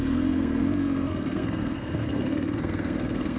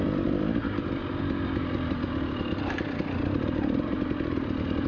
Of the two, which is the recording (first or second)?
second